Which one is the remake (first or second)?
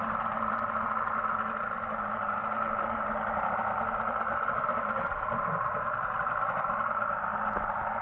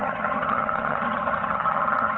second